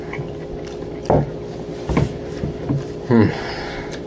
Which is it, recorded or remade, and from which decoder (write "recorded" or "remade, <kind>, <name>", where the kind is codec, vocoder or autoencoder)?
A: recorded